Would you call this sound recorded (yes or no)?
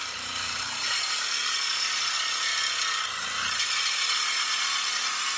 yes